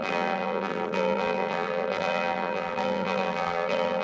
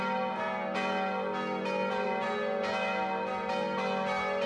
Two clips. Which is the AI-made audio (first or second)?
first